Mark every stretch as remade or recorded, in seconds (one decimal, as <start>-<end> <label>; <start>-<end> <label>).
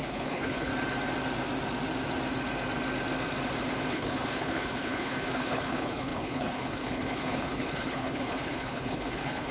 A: 0.0-0.7 remade; 0.7-3.9 recorded; 3.9-9.5 remade